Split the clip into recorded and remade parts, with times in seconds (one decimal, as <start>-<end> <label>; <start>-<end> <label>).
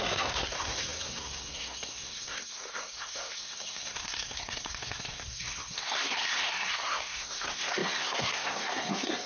0.0-9.3 remade